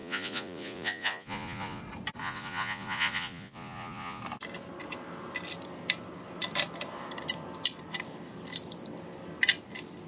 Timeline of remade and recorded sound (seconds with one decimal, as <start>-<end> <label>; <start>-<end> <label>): 0.0-1.8 remade; 1.8-2.2 recorded; 2.2-4.2 remade; 4.2-10.1 recorded